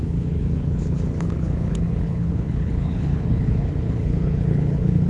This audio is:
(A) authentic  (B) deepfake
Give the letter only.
B